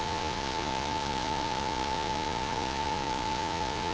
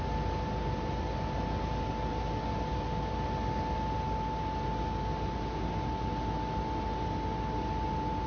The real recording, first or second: second